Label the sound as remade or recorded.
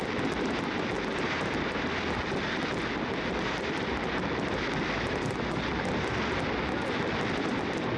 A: recorded